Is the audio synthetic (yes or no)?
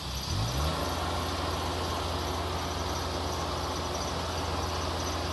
no